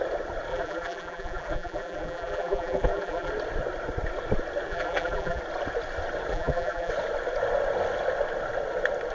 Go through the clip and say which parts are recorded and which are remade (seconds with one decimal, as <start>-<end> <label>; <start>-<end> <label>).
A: 0.0-0.5 recorded; 0.5-3.3 remade; 3.3-4.7 recorded; 4.7-5.4 remade; 5.4-6.3 recorded; 6.3-6.9 remade; 6.9-9.1 recorded